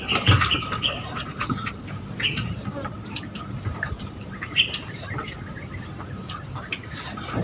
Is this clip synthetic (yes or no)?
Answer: yes